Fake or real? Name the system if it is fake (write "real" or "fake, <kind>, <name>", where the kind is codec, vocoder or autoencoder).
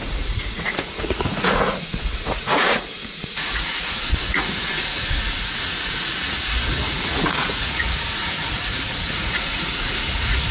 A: fake, vocoder, Vocos